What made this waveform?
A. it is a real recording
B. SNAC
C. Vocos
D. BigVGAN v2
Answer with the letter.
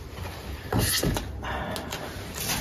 A